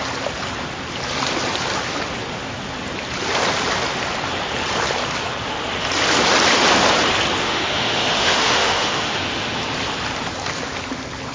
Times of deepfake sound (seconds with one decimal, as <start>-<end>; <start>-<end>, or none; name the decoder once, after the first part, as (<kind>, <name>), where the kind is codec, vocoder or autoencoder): 7.4-9.6 (autoencoder, DAC-VAE)

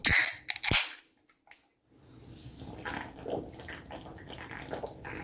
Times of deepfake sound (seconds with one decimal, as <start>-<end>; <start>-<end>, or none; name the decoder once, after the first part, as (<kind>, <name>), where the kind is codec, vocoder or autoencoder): none

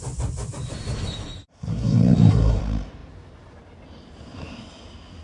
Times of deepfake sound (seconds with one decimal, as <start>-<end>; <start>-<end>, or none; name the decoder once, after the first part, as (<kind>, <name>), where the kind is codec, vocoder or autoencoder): 1.7-2.6 (codec, SNAC)

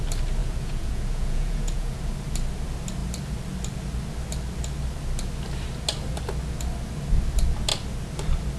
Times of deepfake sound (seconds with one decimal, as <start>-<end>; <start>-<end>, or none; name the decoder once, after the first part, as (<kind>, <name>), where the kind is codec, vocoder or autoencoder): 0.4-2.0 (vocoder, Vocos)